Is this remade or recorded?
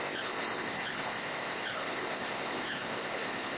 remade